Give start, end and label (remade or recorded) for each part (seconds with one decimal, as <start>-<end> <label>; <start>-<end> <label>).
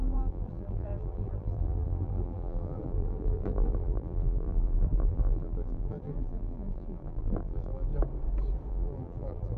0.0-7.9 remade; 7.9-8.7 recorded; 8.7-9.6 remade